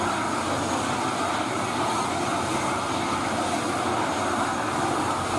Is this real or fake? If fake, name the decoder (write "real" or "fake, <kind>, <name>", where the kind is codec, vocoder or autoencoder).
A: real